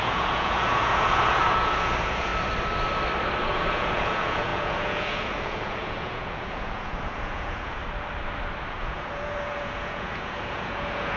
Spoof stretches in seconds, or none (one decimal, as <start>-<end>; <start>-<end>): 0.0-2.3; 3.4-7.8; 8.7-11.2